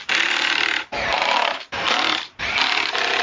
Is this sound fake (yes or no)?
yes